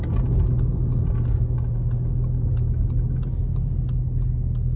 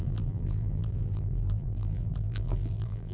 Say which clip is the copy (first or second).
second